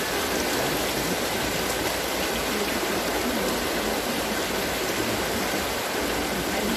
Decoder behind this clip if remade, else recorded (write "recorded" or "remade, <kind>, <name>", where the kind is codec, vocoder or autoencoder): recorded